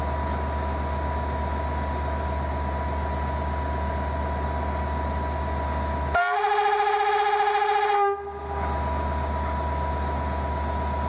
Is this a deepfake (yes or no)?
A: no